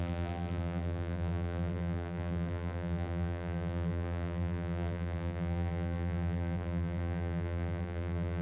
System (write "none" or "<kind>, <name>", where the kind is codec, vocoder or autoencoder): vocoder, BigVGAN v2